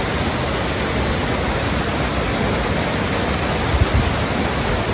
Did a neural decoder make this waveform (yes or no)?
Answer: no